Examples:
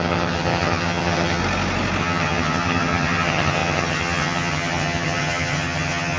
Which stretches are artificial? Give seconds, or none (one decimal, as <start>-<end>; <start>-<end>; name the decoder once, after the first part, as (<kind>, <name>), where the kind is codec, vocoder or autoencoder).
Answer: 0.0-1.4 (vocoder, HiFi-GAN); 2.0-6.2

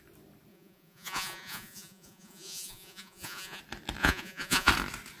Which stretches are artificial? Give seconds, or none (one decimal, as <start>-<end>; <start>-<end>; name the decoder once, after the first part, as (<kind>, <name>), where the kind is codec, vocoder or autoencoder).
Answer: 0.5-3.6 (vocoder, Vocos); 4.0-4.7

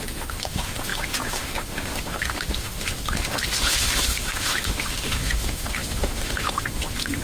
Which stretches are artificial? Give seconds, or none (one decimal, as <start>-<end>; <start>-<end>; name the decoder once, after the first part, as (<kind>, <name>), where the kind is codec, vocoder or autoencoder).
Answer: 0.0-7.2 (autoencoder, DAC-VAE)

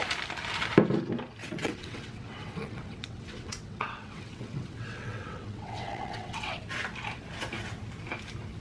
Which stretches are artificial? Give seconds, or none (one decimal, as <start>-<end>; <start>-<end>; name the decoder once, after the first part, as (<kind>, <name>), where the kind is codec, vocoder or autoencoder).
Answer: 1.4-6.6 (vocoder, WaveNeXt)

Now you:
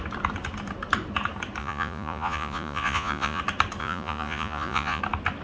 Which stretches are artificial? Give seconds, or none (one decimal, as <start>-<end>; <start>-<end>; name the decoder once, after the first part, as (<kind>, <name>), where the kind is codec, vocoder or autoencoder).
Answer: 1.6-3.4 (vocoder, Vocos); 3.8-5.0